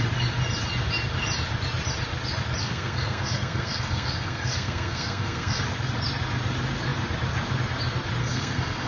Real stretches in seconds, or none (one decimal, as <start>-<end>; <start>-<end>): 0.0-2.6; 5.6-8.2